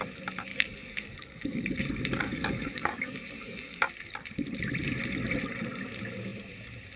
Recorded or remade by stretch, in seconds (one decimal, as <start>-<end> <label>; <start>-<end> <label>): 0.0-0.5 recorded; 0.5-1.7 remade; 1.7-2.3 recorded; 2.3-3.8 remade; 3.8-7.0 recorded